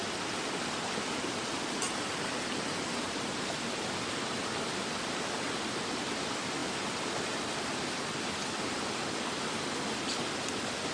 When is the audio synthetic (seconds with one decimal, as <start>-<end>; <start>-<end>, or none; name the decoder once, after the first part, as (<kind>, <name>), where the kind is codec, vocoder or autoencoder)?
none